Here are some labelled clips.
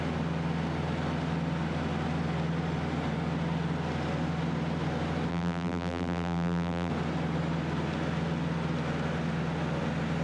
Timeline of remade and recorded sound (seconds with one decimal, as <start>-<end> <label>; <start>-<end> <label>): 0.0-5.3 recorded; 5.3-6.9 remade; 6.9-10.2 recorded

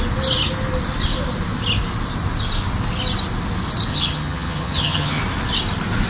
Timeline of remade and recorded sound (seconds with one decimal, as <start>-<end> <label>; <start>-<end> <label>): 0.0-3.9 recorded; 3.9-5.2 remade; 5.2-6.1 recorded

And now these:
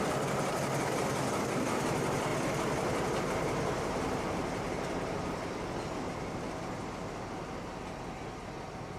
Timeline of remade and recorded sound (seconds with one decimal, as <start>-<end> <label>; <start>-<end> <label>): 0.0-9.0 recorded

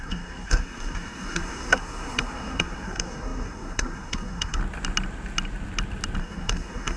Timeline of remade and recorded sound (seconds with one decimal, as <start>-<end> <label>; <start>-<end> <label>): 0.0-4.6 remade; 4.6-6.2 recorded; 6.2-7.0 remade

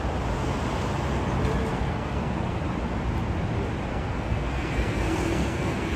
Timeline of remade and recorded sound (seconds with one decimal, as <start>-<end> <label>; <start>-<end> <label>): 0.0-1.7 recorded; 1.7-2.6 remade; 2.6-3.9 recorded; 3.9-6.0 remade

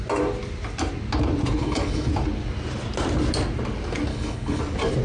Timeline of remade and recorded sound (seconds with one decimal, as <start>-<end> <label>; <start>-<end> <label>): 0.0-1.6 recorded; 1.6-2.1 remade; 2.1-4.1 recorded; 4.1-4.6 remade; 4.6-5.0 recorded